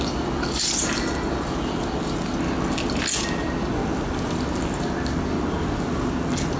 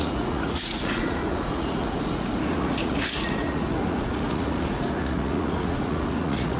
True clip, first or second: first